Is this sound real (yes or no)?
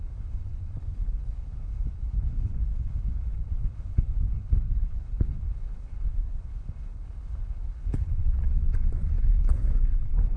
no